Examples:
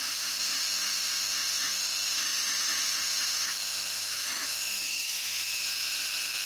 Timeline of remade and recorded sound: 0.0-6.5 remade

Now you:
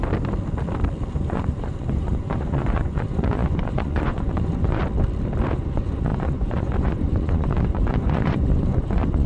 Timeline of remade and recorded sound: 0.0-1.1 recorded; 1.1-4.8 remade; 4.8-5.5 recorded; 5.5-9.3 remade

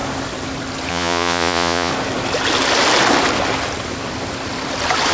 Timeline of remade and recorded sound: 0.0-0.9 recorded; 0.9-1.9 remade; 1.9-5.1 recorded

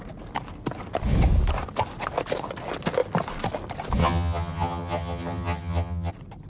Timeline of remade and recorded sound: 0.0-4.0 recorded; 4.0-6.1 remade; 6.1-6.5 recorded

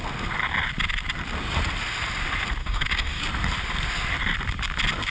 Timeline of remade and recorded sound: 0.0-2.6 recorded; 2.6-3.2 remade; 3.2-5.1 recorded

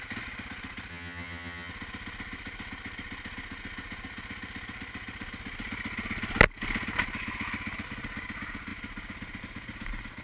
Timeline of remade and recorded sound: 0.0-0.9 recorded; 0.9-1.7 remade; 1.7-10.2 recorded

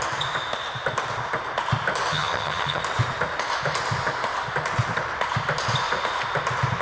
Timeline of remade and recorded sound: 0.0-2.1 recorded; 2.1-2.8 remade; 2.8-6.8 recorded